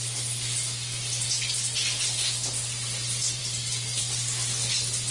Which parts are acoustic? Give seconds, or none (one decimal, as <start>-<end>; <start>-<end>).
0.0-5.1